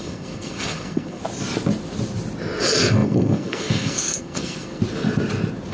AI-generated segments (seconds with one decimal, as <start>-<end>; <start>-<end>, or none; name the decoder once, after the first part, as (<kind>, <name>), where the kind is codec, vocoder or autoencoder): 0.0-1.2 (codec, SNAC); 2.6-4.8